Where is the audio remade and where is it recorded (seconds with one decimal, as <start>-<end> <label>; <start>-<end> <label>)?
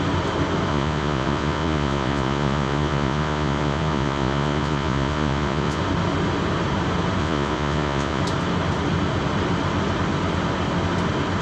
0.0-0.7 recorded; 0.7-5.8 remade; 5.8-7.2 recorded; 7.2-8.2 remade; 8.2-11.4 recorded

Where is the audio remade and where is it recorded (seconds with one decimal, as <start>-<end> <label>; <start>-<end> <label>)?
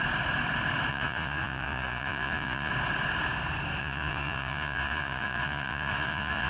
0.0-0.9 recorded; 0.9-2.7 remade; 2.7-3.8 recorded; 3.8-6.5 remade